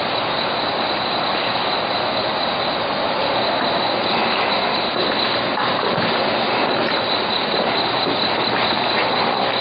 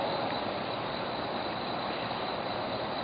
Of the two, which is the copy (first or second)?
second